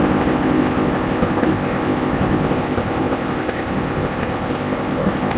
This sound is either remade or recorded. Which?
remade